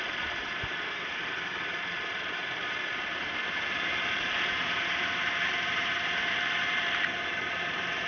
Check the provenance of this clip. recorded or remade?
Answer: remade